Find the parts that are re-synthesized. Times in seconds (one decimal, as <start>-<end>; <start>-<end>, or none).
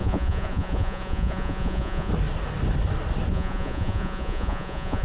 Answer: 0.0-2.1; 3.3-5.0